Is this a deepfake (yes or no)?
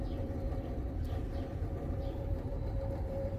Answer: yes